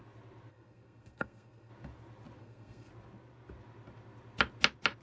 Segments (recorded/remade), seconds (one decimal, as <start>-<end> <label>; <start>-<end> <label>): 0.0-0.5 recorded; 0.5-1.7 remade; 1.7-2.4 recorded; 2.4-2.9 remade; 2.9-5.0 recorded